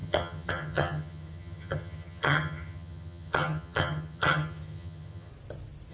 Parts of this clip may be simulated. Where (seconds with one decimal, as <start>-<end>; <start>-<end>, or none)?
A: 0.0-5.3